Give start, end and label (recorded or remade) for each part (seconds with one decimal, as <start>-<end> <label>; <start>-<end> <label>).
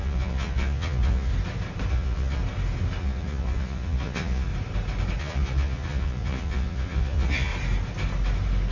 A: 0.0-1.3 remade; 1.3-1.9 recorded; 1.9-2.4 remade; 2.4-3.0 recorded; 3.0-4.5 remade; 4.5-5.2 recorded; 5.2-7.5 remade; 7.5-8.7 recorded